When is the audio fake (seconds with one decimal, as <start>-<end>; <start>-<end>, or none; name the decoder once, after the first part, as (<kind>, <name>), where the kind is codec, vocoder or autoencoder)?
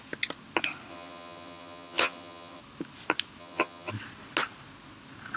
0.9-2.6 (vocoder, HiFi-GAN); 3.4-3.9